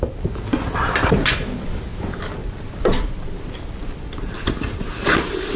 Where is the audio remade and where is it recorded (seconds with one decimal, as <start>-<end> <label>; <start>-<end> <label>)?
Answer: 0.0-5.6 recorded